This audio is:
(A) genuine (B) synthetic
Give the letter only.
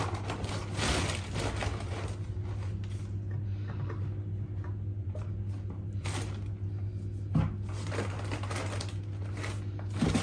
A